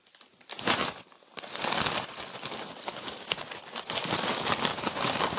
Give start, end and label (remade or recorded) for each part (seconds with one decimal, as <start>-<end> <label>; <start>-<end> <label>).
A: 0.0-2.9 recorded; 2.9-3.6 remade; 3.6-4.7 recorded; 4.7-5.4 remade

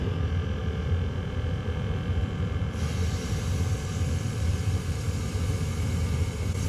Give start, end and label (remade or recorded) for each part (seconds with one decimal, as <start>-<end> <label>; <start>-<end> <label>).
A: 0.0-2.2 recorded; 2.2-3.3 remade; 3.3-4.5 recorded; 4.5-5.4 remade; 5.4-6.7 recorded

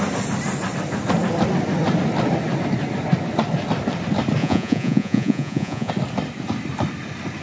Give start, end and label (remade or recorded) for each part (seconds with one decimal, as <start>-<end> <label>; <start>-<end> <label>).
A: 0.0-4.4 recorded; 4.4-5.9 remade; 5.9-7.4 recorded

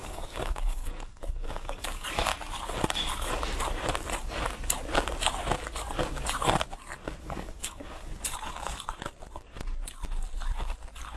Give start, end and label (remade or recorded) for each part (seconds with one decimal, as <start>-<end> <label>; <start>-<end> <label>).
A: 0.0-2.3 remade; 2.3-7.2 recorded; 7.2-8.1 remade; 8.1-11.2 recorded

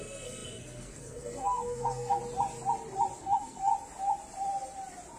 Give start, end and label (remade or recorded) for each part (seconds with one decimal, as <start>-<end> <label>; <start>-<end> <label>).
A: 0.0-2.2 remade; 2.2-3.2 recorded; 3.2-3.7 remade; 3.7-5.2 recorded